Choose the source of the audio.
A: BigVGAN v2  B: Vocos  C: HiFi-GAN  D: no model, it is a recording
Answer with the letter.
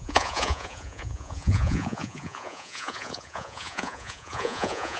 B